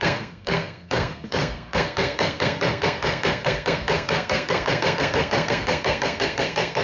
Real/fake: fake